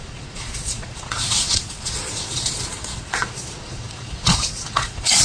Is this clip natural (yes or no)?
no